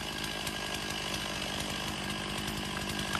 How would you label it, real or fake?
real